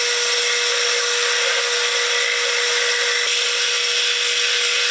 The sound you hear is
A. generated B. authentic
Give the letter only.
B